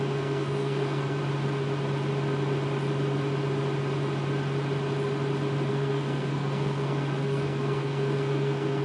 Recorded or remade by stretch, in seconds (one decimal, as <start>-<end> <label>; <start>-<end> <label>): 0.0-1.2 remade; 1.2-5.7 recorded; 5.7-8.8 remade